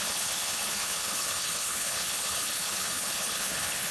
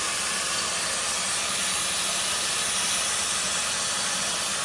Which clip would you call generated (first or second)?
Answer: first